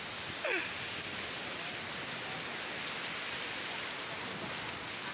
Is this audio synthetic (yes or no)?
no